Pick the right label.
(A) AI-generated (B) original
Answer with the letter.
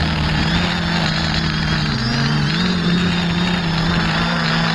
B